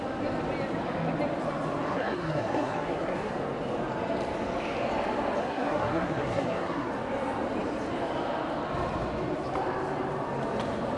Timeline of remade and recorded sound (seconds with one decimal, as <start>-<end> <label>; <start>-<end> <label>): 0.0-1.9 recorded; 1.9-3.3 remade; 3.3-5.4 recorded; 5.4-6.9 remade; 6.9-11.0 recorded